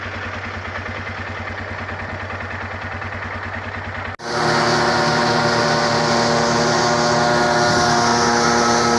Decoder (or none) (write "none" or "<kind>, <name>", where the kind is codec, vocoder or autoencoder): none